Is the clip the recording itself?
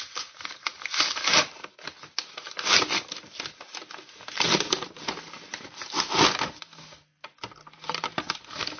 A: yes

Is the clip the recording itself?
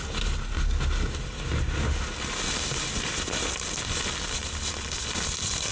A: yes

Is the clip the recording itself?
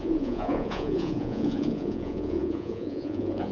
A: no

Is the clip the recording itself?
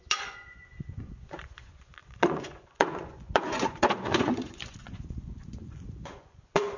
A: no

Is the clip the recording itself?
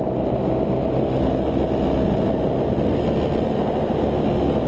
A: yes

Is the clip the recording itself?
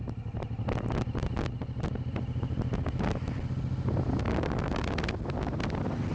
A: yes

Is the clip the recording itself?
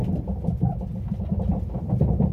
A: yes